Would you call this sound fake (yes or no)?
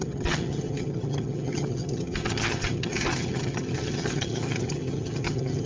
yes